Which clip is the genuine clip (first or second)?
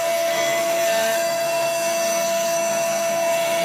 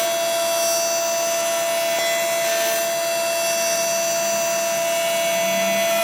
second